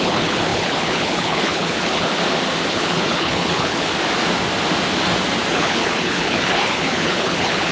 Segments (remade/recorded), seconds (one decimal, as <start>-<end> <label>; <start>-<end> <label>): 0.0-2.2 remade; 2.2-2.7 recorded; 2.7-3.9 remade; 3.9-5.5 recorded; 5.5-7.7 remade